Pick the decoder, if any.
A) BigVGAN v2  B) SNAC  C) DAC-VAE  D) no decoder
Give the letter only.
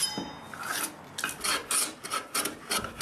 D